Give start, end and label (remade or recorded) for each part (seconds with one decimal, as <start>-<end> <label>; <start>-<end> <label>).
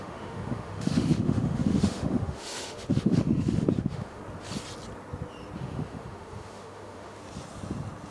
0.0-4.2 remade; 4.2-5.6 recorded; 5.6-7.2 remade; 7.2-8.1 recorded